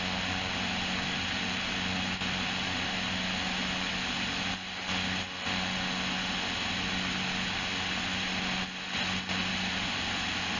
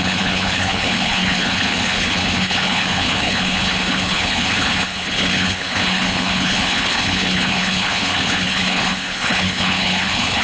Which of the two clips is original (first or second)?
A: first